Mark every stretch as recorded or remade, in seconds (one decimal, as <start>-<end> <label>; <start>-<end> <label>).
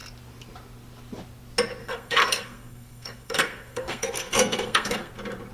0.0-1.8 recorded; 1.8-5.1 remade; 5.1-5.5 recorded